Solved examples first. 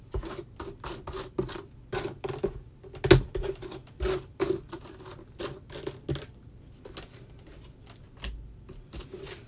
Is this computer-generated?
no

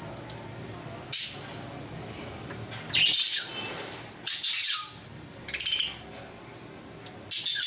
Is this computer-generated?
no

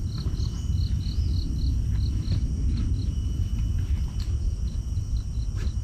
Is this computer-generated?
no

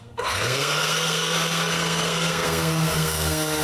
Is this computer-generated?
yes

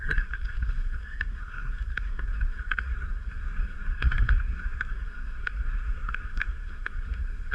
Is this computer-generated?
yes